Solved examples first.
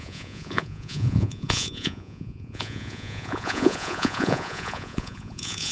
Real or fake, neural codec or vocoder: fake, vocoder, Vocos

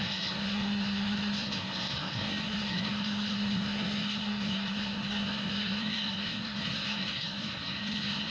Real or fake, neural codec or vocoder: fake, codec, SNAC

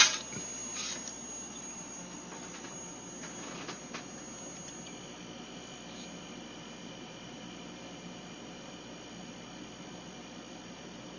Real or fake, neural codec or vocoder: real